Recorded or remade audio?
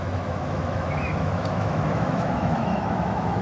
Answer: remade